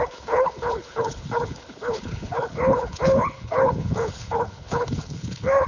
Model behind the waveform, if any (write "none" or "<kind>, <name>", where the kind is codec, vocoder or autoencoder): codec, HILCodec